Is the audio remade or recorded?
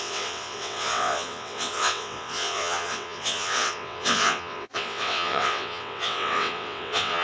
remade